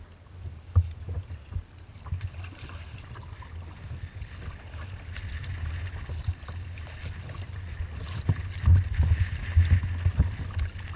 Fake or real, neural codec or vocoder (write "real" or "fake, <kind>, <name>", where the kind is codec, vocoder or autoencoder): real